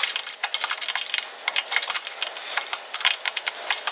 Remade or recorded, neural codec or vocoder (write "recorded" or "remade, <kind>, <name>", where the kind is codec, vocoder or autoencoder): recorded